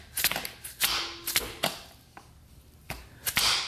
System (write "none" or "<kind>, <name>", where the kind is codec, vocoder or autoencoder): none